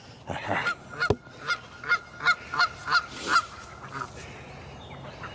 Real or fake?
real